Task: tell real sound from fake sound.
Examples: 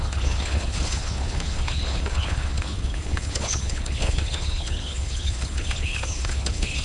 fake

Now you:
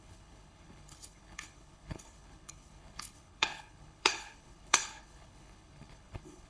fake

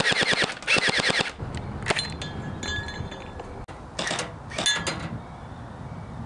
real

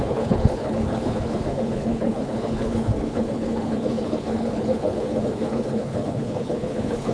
fake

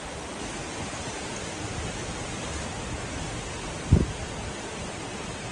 real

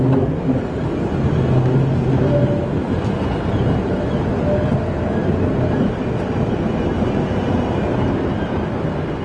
real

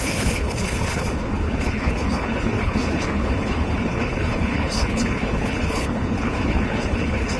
fake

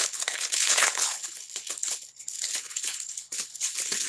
fake